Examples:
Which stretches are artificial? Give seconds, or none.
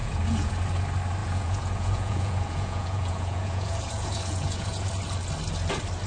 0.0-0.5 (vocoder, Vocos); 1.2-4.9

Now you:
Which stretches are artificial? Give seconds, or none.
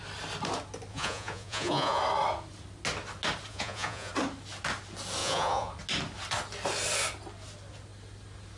0.9-2.0 (vocoder, Vocos); 3.5-4.1; 5.2-5.7